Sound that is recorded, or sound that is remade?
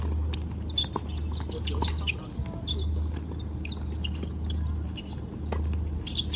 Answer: recorded